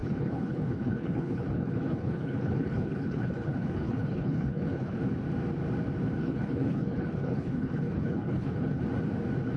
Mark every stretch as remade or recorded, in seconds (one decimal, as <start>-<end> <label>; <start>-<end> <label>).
0.0-5.0 remade; 5.0-6.2 recorded; 6.2-8.8 remade; 8.8-9.6 recorded